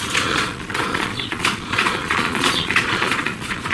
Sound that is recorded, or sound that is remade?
remade